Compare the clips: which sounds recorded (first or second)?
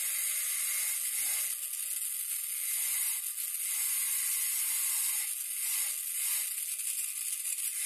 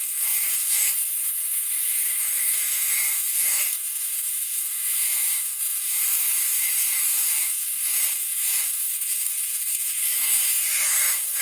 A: first